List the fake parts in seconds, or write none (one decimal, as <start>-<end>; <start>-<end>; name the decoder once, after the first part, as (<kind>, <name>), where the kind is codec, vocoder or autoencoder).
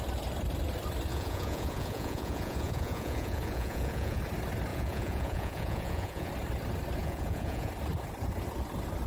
1.1-4.2 (vocoder, Vocos); 4.7-6.3; 7.0-7.7